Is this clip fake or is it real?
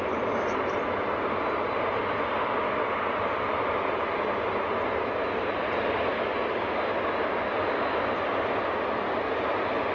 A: real